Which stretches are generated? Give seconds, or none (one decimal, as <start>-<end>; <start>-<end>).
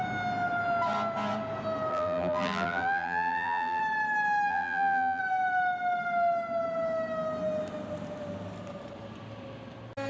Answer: 1.9-3.8; 4.5-5.2